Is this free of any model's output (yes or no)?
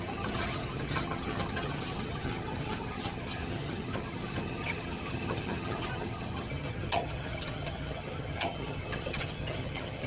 no